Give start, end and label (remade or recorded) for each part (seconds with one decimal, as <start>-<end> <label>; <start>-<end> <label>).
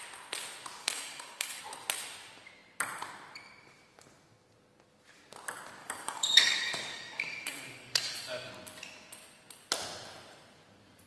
0.0-0.8 recorded; 0.8-1.6 remade; 1.6-5.8 recorded; 5.8-8.5 remade; 8.5-11.1 recorded